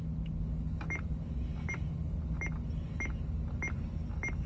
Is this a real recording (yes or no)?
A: yes